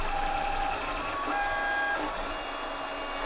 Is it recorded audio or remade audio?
recorded